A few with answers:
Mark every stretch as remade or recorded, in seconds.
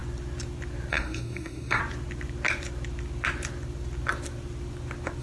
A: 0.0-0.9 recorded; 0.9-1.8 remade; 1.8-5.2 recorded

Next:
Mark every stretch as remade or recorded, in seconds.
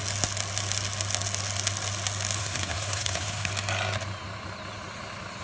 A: 0.0-2.4 recorded; 2.4-3.5 remade; 3.5-5.4 recorded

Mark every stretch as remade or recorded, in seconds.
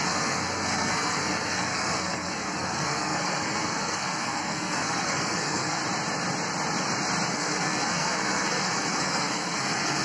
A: 0.0-5.8 remade; 5.8-7.3 recorded; 7.3-10.0 remade